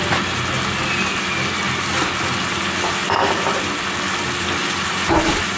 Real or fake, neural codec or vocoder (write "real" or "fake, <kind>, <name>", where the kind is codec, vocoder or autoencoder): real